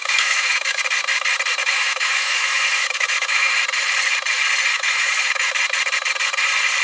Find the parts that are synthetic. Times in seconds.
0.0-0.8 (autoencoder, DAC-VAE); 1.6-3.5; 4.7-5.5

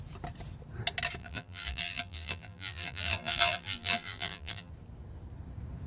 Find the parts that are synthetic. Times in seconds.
1.2-4.7 (vocoder, BigVGAN v2)

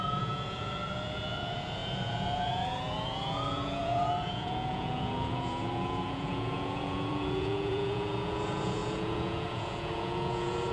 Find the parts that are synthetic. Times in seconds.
0.0-10.7 (vocoder, Vocos)

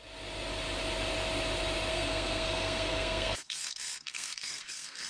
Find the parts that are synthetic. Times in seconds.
1.9-5.1 (codec, SNAC)

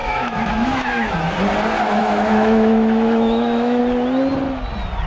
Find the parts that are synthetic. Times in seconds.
0.0-1.1 (autoencoder, DAC-VAE); 2.0-3.8

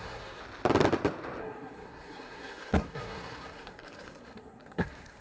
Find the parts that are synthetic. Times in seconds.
0.0-0.4 (codec, SNAC); 1.4-5.2